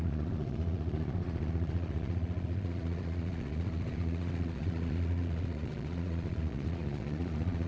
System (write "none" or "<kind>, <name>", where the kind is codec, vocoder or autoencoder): vocoder, Vocos